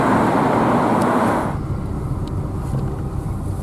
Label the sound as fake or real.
real